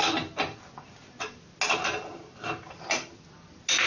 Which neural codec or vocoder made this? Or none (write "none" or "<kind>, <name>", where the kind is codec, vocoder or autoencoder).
none